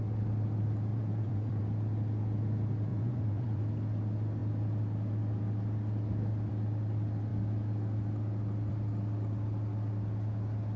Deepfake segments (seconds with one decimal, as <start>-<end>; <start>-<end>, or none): 0.9-1.6; 2.9-3.6

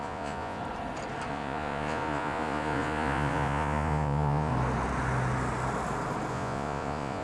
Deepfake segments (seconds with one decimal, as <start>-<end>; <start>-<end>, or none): 0.0-0.6; 1.3-4.5; 6.3-7.2

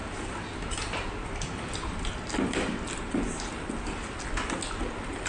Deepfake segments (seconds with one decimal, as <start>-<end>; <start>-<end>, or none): none

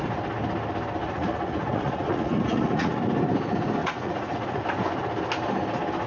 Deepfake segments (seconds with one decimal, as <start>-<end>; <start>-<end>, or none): 1.0-3.0; 3.8-4.6

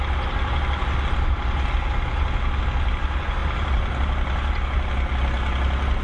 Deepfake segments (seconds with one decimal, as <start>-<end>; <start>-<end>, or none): none